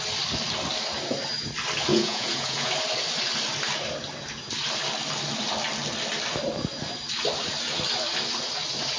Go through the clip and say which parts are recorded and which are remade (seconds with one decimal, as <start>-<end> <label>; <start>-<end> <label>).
0.0-1.9 recorded; 1.9-2.7 remade; 2.7-9.0 recorded